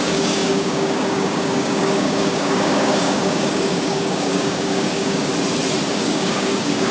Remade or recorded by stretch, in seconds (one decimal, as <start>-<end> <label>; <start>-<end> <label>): 0.0-5.3 remade; 5.3-5.9 recorded; 5.9-6.9 remade